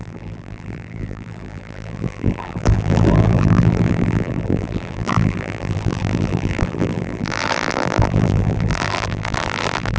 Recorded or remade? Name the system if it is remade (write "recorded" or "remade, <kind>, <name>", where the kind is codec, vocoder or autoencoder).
remade, vocoder, BigVGAN v2